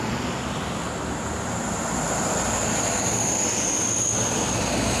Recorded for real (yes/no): yes